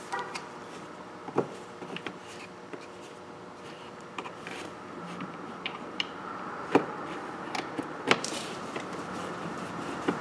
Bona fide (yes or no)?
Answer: no